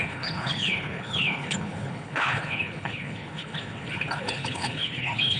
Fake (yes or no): yes